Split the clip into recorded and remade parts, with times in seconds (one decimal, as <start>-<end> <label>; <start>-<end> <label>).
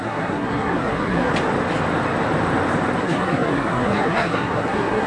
0.0-1.3 remade; 1.3-3.0 recorded; 3.0-5.1 remade